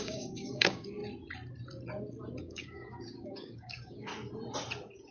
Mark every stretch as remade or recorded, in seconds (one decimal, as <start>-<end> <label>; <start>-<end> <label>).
0.0-1.0 remade; 1.0-2.4 recorded; 2.4-4.1 remade; 4.1-5.1 recorded